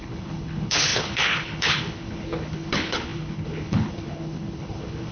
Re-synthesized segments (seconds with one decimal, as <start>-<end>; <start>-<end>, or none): 0.0-5.1